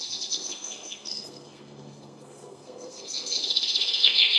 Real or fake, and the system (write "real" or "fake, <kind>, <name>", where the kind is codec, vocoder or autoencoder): fake, codec, SNAC